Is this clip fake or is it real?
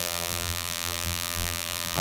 fake